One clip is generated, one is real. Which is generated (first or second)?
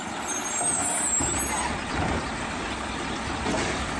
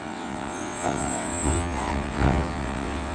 second